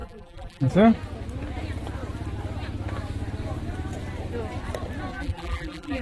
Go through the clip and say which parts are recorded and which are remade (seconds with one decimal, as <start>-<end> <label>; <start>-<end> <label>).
0.0-0.7 remade; 0.7-5.1 recorded; 5.1-6.0 remade